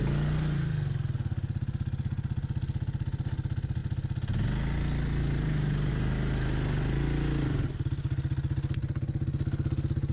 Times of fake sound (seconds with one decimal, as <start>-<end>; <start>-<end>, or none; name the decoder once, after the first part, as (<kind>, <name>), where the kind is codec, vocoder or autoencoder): none